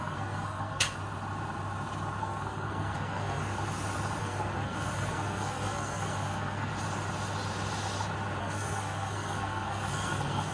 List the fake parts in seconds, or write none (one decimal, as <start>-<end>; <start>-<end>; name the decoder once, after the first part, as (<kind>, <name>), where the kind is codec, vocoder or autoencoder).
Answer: 0.0-1.0 (codec, SNAC); 2.2-3.4; 4.2-6.7; 8.4-10.5